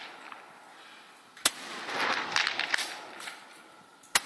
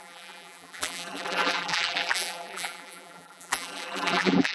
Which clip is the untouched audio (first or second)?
first